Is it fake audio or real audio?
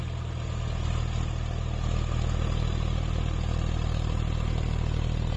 real